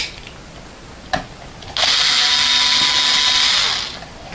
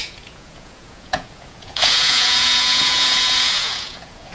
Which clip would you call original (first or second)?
first